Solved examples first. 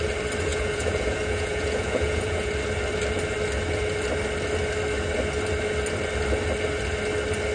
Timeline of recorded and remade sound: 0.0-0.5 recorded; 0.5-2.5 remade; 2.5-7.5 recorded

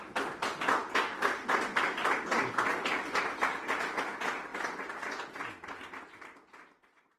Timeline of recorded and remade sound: 0.0-7.2 recorded

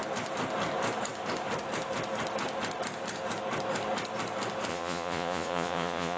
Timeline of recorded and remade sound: 0.0-4.7 recorded; 4.7-6.2 remade

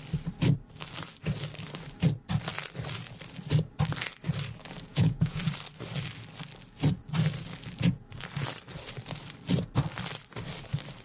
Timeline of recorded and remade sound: 0.0-4.9 recorded; 4.9-5.4 remade; 5.4-11.0 recorded